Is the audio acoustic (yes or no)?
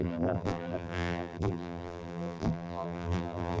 no